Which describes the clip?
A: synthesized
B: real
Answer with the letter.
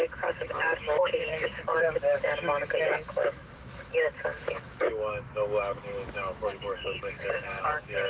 A